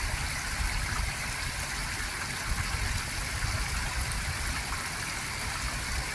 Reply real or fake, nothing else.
real